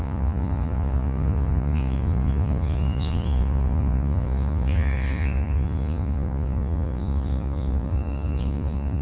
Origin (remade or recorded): remade